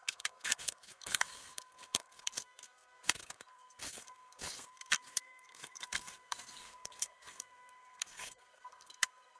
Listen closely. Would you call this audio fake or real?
fake